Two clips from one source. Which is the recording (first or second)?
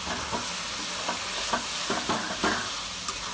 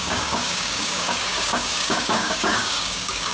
first